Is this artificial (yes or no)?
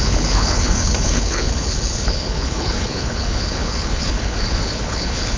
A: yes